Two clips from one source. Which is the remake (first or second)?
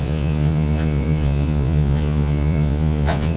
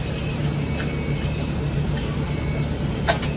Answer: first